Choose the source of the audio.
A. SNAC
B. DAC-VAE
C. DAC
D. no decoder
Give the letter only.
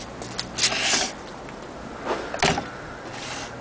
D